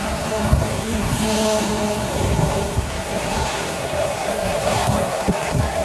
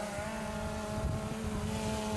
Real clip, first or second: second